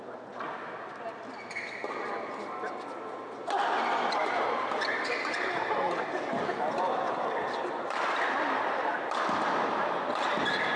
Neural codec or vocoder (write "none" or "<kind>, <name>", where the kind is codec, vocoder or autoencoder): none